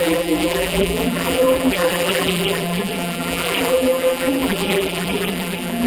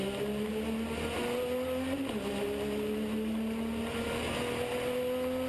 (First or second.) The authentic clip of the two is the second